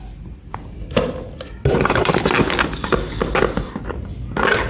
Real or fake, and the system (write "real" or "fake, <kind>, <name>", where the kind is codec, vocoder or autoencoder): real